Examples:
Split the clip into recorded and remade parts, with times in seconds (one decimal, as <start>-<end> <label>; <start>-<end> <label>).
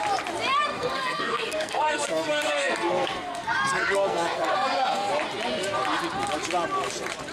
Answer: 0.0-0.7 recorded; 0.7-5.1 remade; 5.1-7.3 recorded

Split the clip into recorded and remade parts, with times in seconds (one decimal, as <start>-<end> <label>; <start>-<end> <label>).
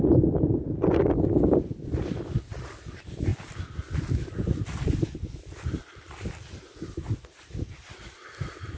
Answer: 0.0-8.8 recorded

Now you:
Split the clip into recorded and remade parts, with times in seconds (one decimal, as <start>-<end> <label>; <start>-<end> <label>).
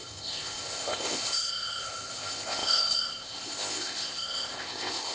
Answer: 0.0-5.1 remade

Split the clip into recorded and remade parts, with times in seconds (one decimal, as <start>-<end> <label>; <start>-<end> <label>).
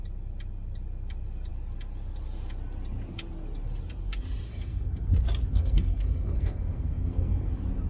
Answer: 0.0-4.5 recorded; 4.5-5.1 remade; 5.1-5.5 recorded; 5.5-7.5 remade; 7.5-7.9 recorded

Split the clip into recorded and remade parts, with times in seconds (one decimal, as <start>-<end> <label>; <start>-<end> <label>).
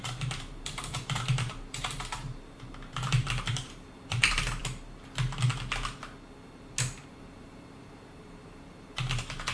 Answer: 0.0-4.6 remade; 4.6-7.1 recorded; 7.1-9.5 remade